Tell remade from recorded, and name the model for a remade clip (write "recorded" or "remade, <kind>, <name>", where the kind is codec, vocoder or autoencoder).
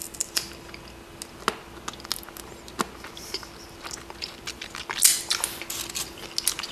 recorded